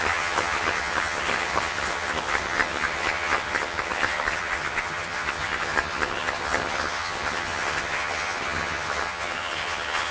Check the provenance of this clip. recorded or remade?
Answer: remade